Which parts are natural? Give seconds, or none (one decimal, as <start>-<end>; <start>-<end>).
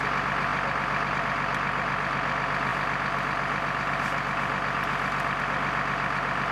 0.0-6.5